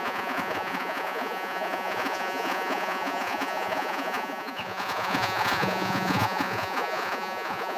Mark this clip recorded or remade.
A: remade